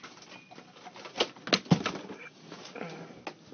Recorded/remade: recorded